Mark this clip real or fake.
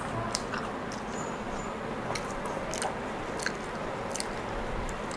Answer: real